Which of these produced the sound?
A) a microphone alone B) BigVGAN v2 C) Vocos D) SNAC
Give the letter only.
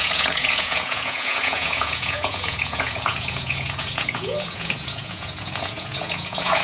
C